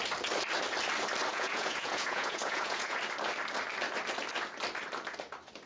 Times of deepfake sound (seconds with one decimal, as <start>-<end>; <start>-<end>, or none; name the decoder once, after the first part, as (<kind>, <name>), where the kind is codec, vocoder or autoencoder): 1.3-3.0 (vocoder, Vocos)